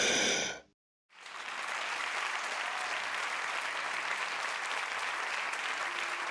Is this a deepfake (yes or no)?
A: no